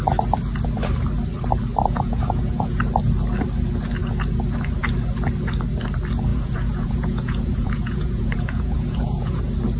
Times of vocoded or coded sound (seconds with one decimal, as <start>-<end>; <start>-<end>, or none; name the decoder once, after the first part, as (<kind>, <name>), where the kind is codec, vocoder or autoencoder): 1.7-2.8 (vocoder, Vocos); 6.3-9.4